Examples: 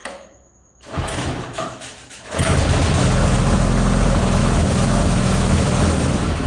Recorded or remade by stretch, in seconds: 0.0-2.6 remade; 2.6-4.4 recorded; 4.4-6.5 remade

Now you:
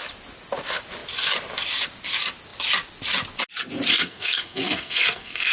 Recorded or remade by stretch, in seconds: 0.0-3.9 recorded; 3.9-5.5 remade